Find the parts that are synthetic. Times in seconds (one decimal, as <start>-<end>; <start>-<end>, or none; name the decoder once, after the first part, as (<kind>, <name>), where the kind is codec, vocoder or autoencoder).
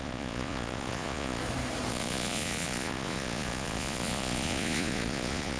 0.0-1.4 (vocoder, Vocos); 1.9-5.6